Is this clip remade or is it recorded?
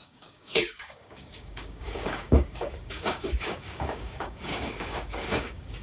remade